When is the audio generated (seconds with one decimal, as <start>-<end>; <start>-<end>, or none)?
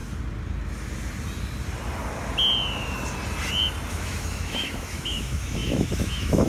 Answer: 3.9-6.5